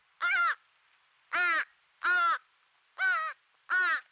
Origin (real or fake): real